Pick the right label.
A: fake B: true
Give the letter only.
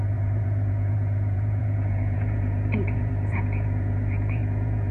A